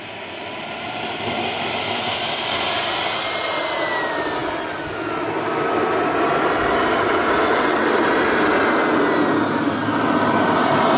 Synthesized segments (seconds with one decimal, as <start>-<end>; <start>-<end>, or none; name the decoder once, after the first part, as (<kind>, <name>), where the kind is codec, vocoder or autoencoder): 7.5-8.0 (vocoder, WaveNeXt)